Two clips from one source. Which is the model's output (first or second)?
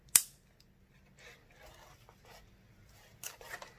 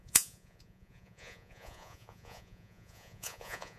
second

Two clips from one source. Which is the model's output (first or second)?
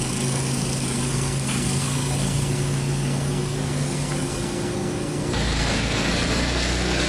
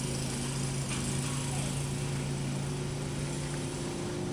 first